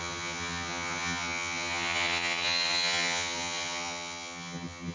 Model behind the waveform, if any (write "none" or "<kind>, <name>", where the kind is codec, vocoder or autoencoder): vocoder, HiFi-GAN